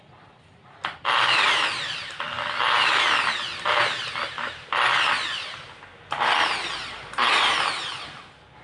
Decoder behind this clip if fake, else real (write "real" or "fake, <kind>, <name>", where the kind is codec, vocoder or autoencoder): real